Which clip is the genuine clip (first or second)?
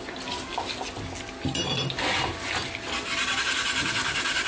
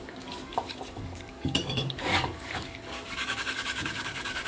first